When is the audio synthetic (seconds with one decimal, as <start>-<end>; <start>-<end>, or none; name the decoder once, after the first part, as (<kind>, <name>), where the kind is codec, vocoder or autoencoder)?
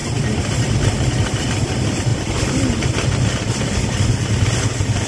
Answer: 0.7-2.1 (vocoder, BigVGAN v2); 4.0-5.1